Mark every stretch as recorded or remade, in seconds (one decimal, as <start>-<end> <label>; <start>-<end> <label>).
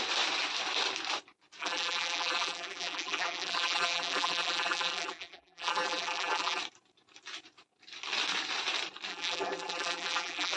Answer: 0.0-1.6 recorded; 1.6-6.6 remade; 6.6-9.1 recorded; 9.1-10.6 remade